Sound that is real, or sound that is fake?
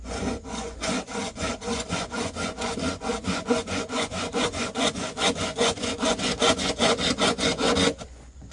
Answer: fake